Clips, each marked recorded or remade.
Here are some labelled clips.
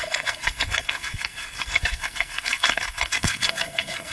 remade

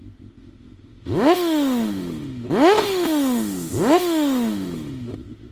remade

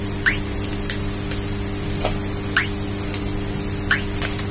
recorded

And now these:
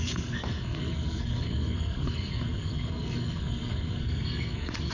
remade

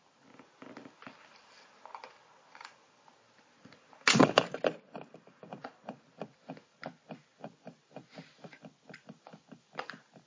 recorded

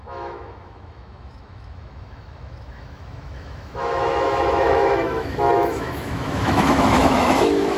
remade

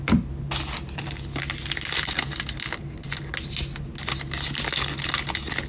recorded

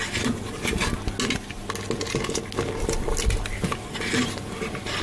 recorded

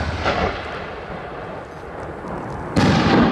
recorded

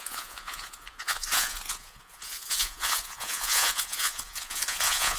remade